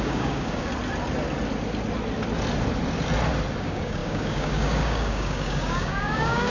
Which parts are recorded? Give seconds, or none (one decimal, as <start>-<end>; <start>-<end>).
0.7-3.6